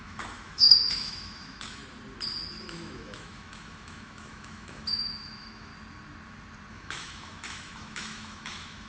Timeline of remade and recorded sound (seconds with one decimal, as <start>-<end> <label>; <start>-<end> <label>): 0.0-1.8 remade; 1.8-2.6 recorded; 2.6-5.7 remade; 5.7-6.7 recorded; 6.7-8.9 remade